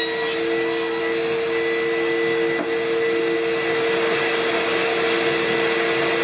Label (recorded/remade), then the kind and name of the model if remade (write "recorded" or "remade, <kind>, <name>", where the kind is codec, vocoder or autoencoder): recorded